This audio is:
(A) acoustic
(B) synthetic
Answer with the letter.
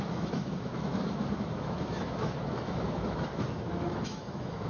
B